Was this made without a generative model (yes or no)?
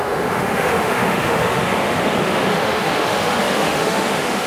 no